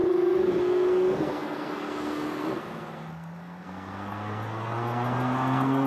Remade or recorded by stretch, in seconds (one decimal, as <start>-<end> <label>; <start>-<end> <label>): 0.0-5.9 remade